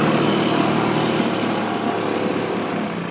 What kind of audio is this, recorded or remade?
recorded